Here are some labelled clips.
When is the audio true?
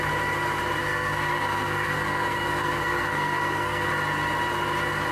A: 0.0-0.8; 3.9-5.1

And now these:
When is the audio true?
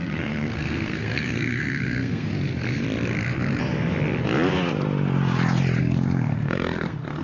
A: 2.3-5.8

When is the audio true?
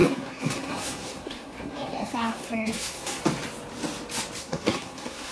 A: 3.2-4.4